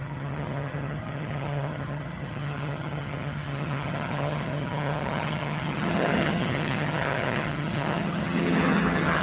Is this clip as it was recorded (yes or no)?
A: no